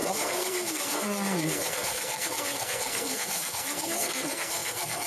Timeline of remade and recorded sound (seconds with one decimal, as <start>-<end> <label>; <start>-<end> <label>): 0.0-5.1 remade

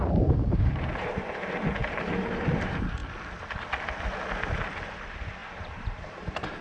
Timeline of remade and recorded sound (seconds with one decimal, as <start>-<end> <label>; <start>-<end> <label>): 0.0-3.0 remade; 3.0-4.9 recorded; 4.9-6.6 remade

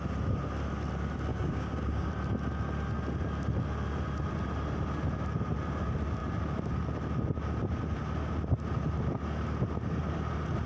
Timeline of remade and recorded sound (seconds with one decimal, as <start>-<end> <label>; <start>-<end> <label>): 0.0-1.3 recorded; 1.3-2.1 remade; 2.1-10.7 recorded

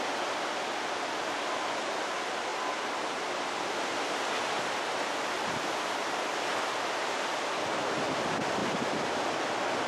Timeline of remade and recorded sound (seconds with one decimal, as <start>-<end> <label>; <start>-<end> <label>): 0.0-9.9 recorded

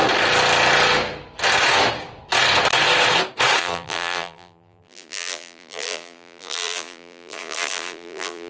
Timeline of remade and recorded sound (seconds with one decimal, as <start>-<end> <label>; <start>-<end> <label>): 0.0-3.6 recorded; 3.6-8.5 remade

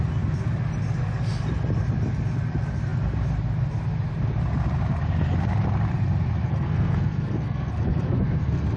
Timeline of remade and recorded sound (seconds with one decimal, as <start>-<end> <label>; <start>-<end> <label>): 0.0-6.4 recorded; 6.4-8.8 remade

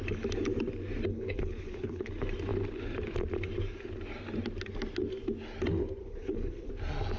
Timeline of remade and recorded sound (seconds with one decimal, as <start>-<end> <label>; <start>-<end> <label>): 0.0-1.1 recorded; 1.1-2.1 remade; 2.1-6.0 recorded; 6.0-6.7 remade; 6.7-7.2 recorded

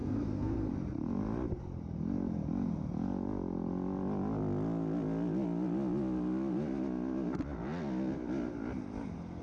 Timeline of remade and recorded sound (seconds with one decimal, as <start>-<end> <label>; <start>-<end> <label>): 0.0-0.7 remade; 0.7-9.4 recorded